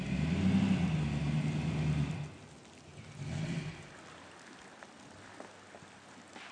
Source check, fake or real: real